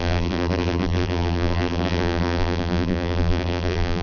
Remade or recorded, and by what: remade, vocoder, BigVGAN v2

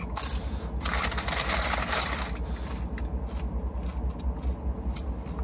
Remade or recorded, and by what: recorded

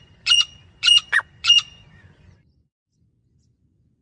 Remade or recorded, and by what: remade, vocoder, Vocos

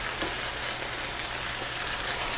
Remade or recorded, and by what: recorded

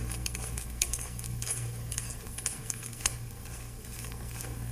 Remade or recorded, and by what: remade, codec, SNAC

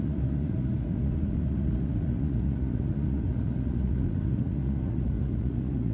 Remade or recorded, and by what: remade, vocoder, Vocos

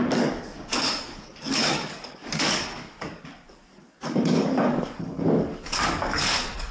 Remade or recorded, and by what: remade, codec, DAC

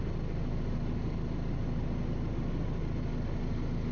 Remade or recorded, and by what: recorded